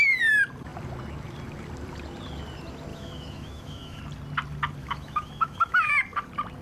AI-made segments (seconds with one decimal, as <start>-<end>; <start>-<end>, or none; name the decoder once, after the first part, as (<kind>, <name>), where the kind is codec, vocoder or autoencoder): 2.9-4.0 (autoencoder, DAC-VAE); 4.8-5.9